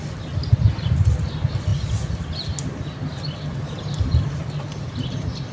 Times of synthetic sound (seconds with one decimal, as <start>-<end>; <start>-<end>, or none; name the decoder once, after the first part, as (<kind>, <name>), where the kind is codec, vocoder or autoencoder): none